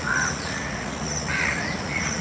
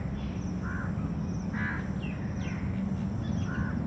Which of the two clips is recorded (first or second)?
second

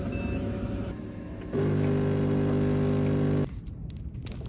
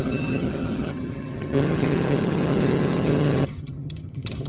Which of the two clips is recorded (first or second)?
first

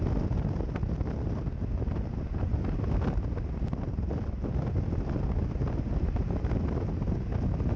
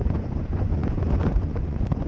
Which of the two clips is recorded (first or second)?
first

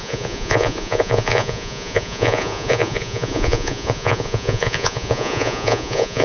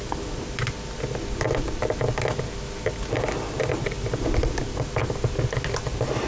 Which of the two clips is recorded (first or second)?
second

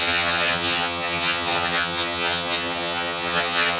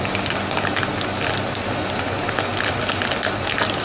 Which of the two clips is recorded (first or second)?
second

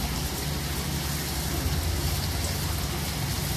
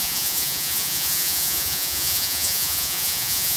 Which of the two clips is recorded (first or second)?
first